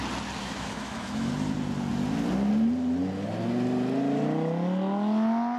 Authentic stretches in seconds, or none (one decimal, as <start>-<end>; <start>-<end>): 0.0-0.4; 1.3-5.6